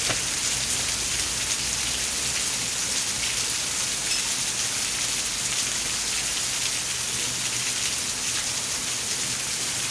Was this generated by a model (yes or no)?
no